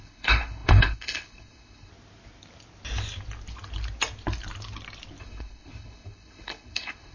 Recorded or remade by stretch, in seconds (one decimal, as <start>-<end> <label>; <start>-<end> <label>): 0.0-1.9 remade; 1.9-5.2 recorded; 5.2-7.1 remade